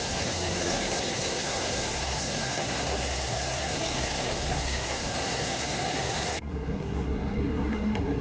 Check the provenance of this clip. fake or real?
fake